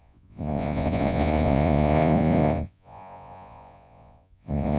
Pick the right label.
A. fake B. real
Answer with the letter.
A